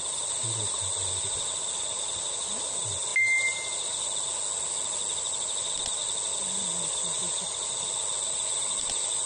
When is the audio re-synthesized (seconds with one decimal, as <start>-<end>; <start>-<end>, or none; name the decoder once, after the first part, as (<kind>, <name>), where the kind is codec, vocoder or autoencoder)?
none

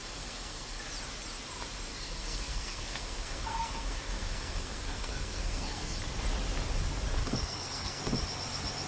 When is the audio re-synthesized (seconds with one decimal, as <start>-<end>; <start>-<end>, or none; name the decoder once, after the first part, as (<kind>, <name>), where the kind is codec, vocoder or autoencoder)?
0.0-0.8 (codec, SNAC); 1.9-6.0; 7.2-8.0

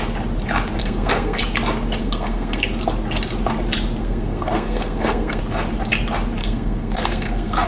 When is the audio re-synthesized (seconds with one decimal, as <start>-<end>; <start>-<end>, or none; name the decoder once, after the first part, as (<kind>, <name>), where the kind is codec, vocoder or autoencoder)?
0.8-1.4 (codec, SNAC); 2.0-2.6; 4.0-5.4; 6.4-7.7